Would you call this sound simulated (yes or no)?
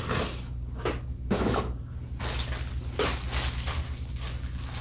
no